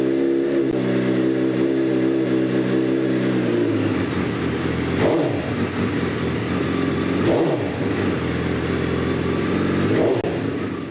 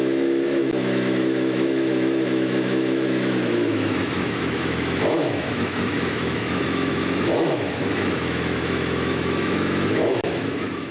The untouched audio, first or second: first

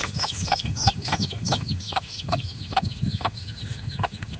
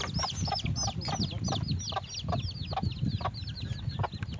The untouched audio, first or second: second